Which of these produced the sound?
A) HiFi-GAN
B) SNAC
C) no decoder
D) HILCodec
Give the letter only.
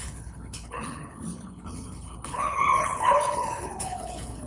D